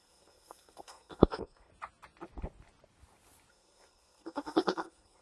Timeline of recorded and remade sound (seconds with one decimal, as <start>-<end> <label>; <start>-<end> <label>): 0.0-1.7 remade; 1.7-3.5 recorded; 3.5-5.2 remade

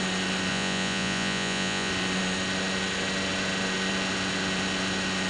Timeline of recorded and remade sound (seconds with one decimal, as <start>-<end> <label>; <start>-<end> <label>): 0.0-0.5 recorded; 0.5-1.9 remade; 1.9-5.3 recorded

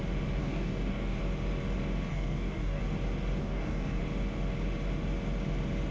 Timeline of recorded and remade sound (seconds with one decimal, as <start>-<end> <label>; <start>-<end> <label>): 0.0-0.4 recorded; 0.4-1.2 remade; 1.2-2.1 recorded; 2.1-2.8 remade; 2.8-3.4 recorded; 3.4-4.0 remade; 4.0-5.9 recorded

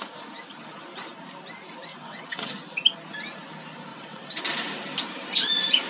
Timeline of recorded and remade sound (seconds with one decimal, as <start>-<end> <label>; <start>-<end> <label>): 0.0-1.9 recorded; 1.9-2.5 remade; 2.5-3.9 recorded; 3.9-4.4 remade; 4.4-5.9 recorded

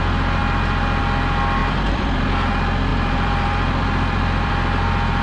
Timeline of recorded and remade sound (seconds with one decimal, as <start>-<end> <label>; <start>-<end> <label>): 0.0-1.6 recorded; 1.6-2.3 remade; 2.3-2.9 recorded; 2.9-4.5 remade; 4.5-5.2 recorded

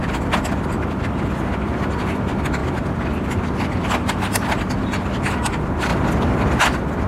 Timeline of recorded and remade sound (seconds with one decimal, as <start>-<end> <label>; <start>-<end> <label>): 0.0-7.1 recorded

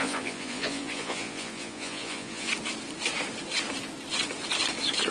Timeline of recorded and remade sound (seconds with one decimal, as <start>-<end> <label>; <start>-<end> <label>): 0.0-2.5 remade; 2.5-5.1 recorded

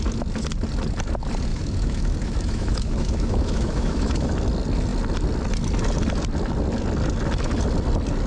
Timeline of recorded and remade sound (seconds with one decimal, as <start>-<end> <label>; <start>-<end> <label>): 0.0-1.5 recorded; 1.5-4.3 remade; 4.3-8.3 recorded